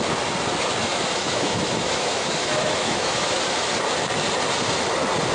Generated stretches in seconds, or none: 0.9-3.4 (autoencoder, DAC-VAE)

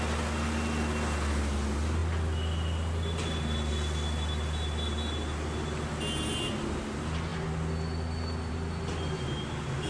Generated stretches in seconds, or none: none

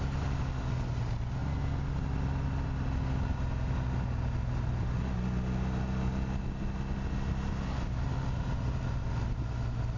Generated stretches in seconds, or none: none

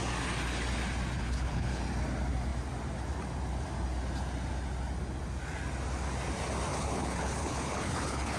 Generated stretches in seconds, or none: 1.2-1.8 (codec, HILCodec); 6.7-8.4

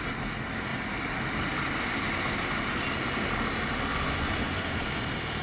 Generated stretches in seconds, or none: 3.9-5.0 (vocoder, Vocos)

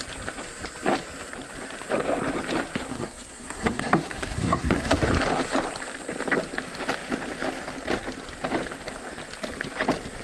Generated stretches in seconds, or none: 2.9-5.1 (codec, SNAC)

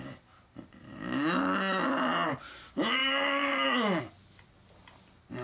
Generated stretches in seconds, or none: none

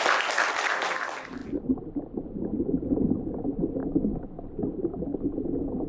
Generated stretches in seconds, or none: 3.8-4.4 (autoencoder, DAC-VAE)